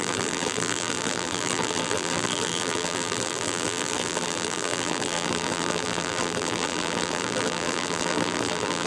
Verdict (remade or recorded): remade